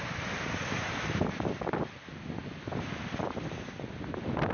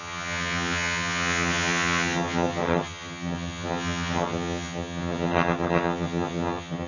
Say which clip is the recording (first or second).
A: first